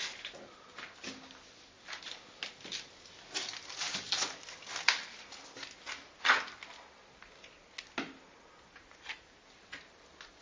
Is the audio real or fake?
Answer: real